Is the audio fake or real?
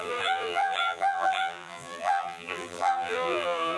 fake